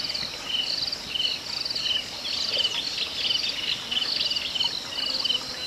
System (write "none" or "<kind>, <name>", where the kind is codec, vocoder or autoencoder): none